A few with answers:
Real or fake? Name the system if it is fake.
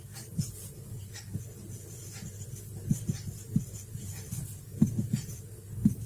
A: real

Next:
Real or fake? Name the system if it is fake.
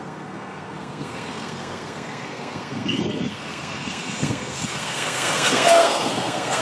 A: fake, codec, SNAC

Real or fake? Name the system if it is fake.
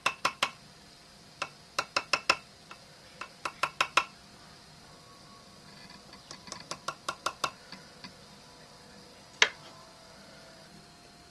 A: real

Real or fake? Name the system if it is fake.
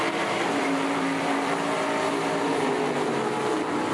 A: fake, vocoder, BigVGAN v2